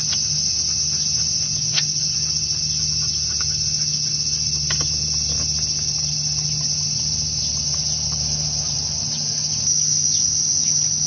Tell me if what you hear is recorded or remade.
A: recorded